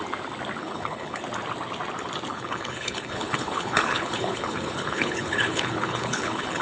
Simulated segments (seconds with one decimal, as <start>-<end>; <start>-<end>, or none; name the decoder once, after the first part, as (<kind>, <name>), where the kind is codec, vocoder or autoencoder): 0.6-1.2 (codec, HILCodec); 2.3-6.6